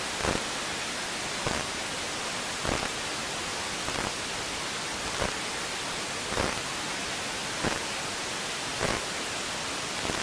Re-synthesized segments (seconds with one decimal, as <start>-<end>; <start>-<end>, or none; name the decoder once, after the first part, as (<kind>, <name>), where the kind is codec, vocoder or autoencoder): none